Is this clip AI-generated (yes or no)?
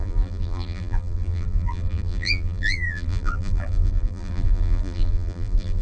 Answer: yes